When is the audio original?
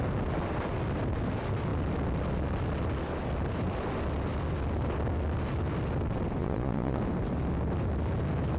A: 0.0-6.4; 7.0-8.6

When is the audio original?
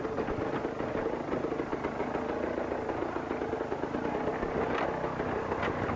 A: 0.0-6.0